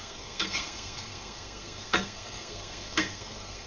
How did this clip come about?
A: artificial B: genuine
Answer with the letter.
A